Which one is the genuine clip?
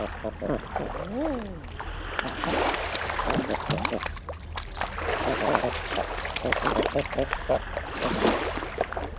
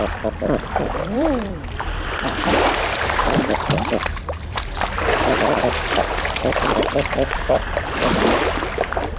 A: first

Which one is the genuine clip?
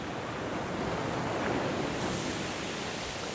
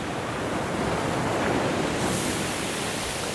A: first